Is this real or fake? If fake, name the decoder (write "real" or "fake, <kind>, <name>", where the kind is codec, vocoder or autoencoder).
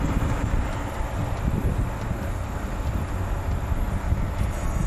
real